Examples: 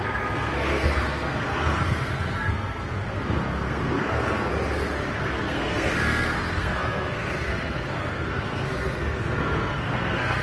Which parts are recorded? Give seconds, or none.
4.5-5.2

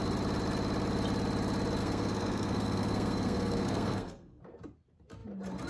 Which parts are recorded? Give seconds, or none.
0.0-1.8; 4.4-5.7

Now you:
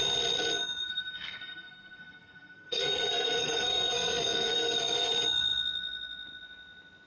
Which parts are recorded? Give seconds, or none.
0.0-0.8; 5.1-7.1

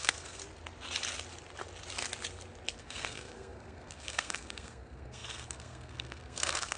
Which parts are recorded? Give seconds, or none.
0.4-2.8

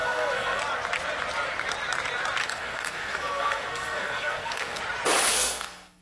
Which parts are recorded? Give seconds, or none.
0.6-2.4; 4.8-5.3

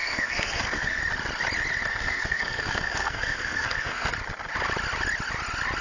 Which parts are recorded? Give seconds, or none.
1.0-1.9; 4.1-5.8